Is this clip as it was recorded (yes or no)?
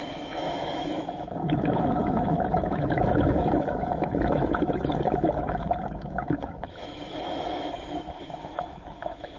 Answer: no